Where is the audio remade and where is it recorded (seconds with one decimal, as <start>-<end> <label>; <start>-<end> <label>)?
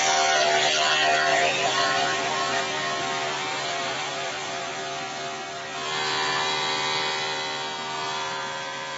0.0-1.3 recorded; 1.3-2.6 remade; 2.6-3.5 recorded; 3.5-4.7 remade; 4.7-9.0 recorded